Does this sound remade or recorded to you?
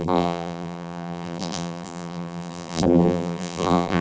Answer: remade